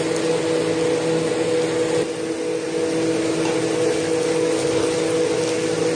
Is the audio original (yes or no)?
yes